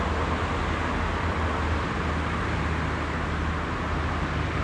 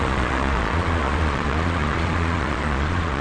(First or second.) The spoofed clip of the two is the second